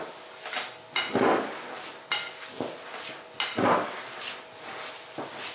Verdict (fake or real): real